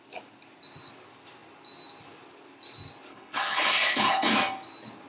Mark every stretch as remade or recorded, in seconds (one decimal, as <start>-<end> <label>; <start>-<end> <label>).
0.0-3.1 recorded; 3.1-4.3 remade; 4.3-5.1 recorded